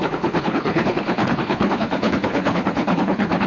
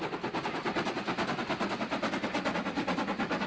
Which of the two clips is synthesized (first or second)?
first